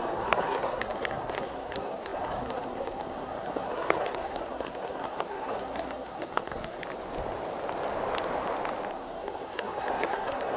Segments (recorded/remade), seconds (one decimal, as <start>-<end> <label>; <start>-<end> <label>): 0.0-6.8 remade; 6.8-8.9 recorded; 8.9-10.6 remade